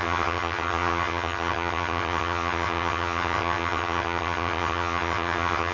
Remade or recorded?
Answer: remade